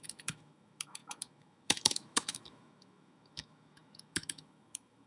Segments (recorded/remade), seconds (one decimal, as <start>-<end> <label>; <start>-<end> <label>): 0.0-5.1 remade